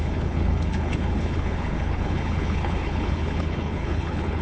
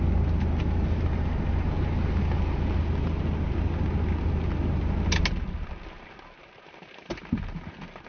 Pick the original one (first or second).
second